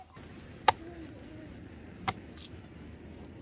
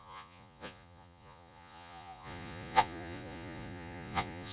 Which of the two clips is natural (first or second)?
first